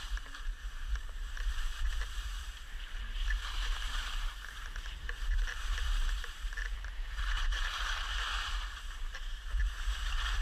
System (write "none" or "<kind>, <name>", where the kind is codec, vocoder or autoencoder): vocoder, BigVGAN v2